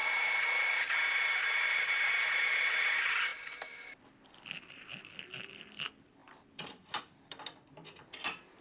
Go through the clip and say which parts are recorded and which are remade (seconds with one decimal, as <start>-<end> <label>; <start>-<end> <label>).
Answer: 0.0-0.8 recorded; 0.8-8.6 remade